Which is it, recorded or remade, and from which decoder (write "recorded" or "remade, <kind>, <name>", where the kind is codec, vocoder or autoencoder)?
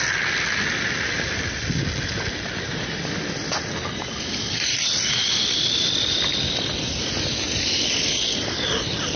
recorded